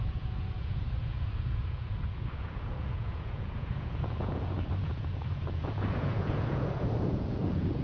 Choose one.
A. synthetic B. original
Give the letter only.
A